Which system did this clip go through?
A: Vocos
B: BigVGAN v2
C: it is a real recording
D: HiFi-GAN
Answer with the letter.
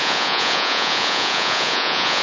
A